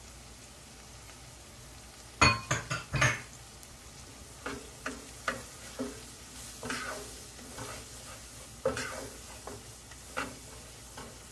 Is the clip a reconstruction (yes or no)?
no